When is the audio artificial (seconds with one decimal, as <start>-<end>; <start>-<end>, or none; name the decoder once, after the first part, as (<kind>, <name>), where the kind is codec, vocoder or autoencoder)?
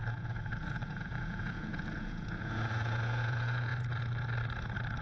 0.0-3.7 (vocoder, Vocos)